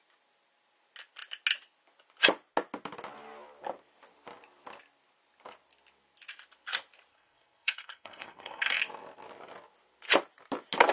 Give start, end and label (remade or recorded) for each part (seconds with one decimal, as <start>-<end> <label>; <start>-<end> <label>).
0.0-7.1 recorded; 7.1-8.8 remade; 8.8-10.9 recorded